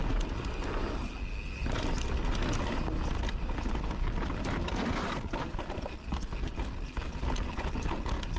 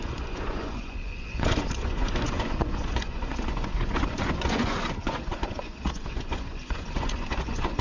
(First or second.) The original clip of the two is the first